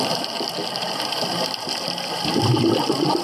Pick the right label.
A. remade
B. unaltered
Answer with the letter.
A